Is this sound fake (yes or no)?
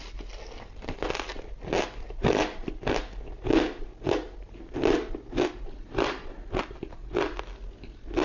no